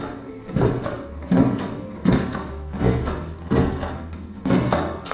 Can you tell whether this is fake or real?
fake